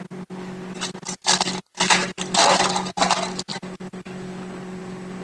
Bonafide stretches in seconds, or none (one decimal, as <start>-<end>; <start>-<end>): 0.0-5.2